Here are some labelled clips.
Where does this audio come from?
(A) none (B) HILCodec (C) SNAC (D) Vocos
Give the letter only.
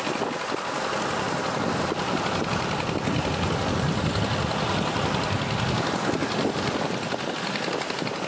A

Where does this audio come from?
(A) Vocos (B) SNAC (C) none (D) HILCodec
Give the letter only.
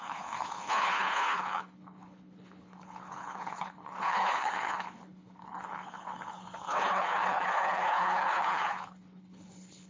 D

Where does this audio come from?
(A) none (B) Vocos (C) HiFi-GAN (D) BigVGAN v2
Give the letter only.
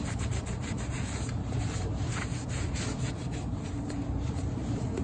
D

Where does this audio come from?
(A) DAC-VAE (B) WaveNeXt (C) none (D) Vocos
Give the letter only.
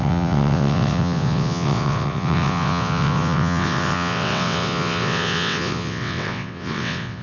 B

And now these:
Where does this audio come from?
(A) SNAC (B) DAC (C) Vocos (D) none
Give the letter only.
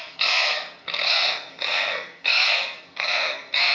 A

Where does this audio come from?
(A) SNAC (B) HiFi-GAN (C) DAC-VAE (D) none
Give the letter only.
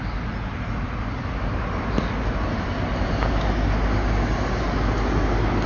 D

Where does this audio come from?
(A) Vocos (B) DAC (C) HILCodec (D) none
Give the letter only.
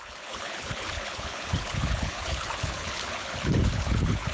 C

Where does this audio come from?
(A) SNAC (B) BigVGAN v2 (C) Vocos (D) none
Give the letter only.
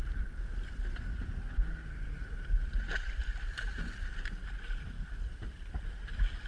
D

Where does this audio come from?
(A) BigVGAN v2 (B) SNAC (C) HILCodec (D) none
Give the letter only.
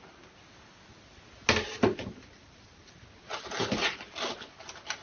D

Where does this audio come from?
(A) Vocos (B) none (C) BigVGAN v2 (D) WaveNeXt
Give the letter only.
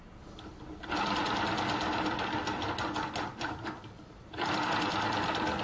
B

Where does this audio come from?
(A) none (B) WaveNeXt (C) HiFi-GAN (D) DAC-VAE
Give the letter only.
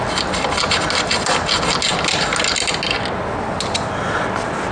A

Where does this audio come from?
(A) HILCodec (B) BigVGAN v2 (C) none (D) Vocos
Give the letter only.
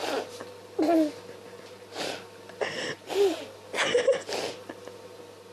C